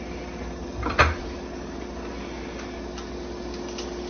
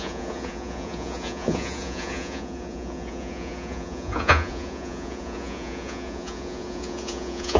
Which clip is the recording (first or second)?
first